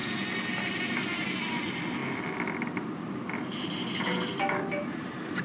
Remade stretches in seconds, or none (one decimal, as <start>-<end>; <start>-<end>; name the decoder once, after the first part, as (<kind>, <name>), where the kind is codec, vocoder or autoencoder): none